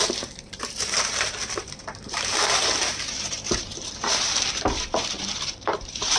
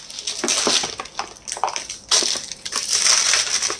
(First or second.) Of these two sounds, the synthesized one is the first